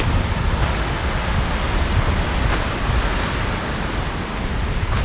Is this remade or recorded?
recorded